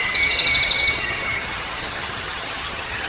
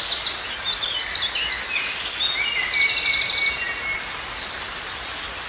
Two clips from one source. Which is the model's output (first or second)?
first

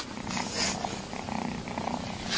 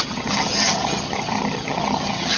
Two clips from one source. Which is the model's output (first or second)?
second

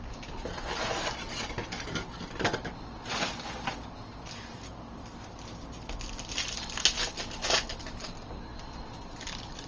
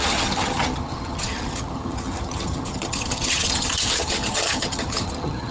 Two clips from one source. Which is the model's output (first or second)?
second